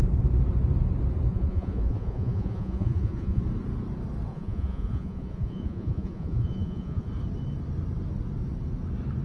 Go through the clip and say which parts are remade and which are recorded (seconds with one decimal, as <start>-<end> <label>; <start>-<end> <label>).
0.0-1.3 recorded; 1.3-3.4 remade; 3.4-4.3 recorded; 4.3-7.1 remade; 7.1-9.2 recorded

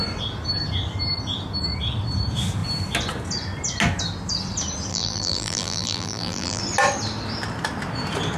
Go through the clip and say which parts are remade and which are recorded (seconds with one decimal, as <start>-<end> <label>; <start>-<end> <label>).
0.0-4.9 recorded; 4.9-6.6 remade; 6.6-8.4 recorded

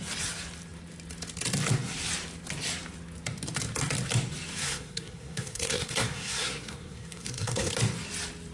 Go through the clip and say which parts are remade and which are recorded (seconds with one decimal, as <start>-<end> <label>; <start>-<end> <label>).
0.0-4.6 recorded; 4.6-7.7 remade; 7.7-8.5 recorded